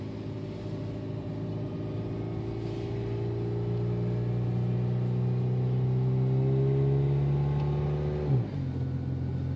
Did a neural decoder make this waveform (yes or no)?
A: no